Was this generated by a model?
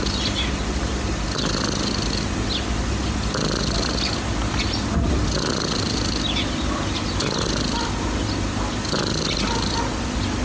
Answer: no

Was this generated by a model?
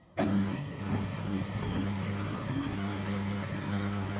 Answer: yes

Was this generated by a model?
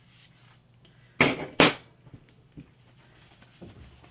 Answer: no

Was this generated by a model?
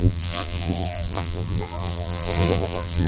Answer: yes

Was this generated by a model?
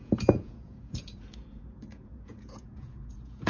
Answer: yes